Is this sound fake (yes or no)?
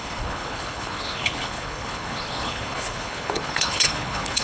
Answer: yes